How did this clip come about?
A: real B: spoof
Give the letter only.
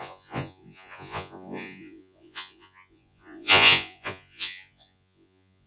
B